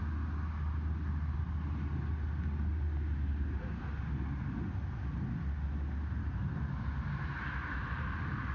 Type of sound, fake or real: real